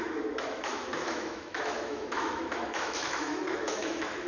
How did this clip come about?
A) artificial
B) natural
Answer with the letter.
A